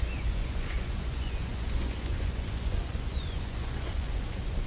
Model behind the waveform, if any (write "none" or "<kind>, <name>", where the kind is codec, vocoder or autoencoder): vocoder, Vocos